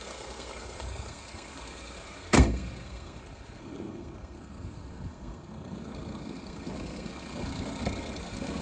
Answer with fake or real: fake